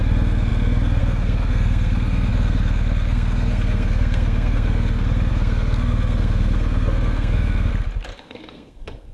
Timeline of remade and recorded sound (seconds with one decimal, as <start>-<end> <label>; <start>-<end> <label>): 0.0-7.7 remade; 7.7-8.2 recorded; 8.2-9.1 remade